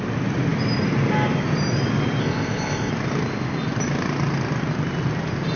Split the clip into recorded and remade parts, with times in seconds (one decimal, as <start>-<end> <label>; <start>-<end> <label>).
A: 0.0-2.2 recorded; 2.2-2.9 remade; 2.9-5.6 recorded